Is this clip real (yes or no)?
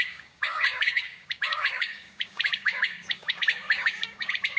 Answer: no